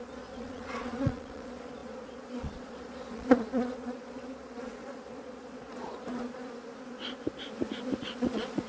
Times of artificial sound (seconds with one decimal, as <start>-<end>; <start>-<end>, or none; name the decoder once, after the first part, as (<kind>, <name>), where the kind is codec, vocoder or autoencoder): 0.0-6.4 (vocoder, Vocos); 8.0-8.7